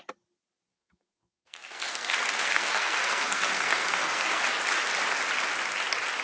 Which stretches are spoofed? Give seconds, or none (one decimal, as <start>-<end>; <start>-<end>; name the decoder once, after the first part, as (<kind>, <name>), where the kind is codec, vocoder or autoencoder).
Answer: 0.7-4.4 (codec, SNAC)